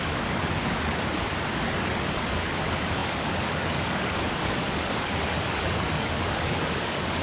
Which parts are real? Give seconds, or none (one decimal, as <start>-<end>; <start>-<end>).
none